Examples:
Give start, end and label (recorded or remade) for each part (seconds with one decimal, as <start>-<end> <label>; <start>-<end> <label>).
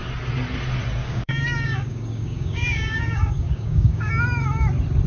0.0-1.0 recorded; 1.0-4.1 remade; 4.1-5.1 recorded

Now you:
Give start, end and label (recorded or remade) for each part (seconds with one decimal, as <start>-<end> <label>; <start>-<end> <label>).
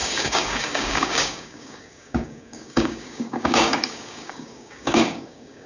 0.0-5.7 remade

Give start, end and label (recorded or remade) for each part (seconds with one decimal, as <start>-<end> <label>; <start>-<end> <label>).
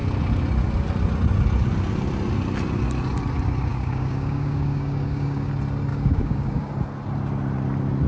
0.0-3.7 recorded; 3.7-5.5 remade; 5.5-5.9 recorded; 5.9-6.7 remade; 6.7-8.1 recorded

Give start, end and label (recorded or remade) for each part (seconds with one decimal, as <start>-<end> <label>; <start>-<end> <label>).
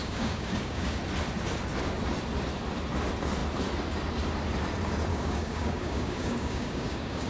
0.0-1.0 remade; 1.0-5.1 recorded; 5.1-7.3 remade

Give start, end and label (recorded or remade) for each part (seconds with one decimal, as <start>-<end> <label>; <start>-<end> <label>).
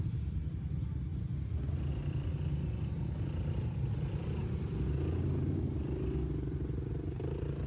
0.0-7.7 recorded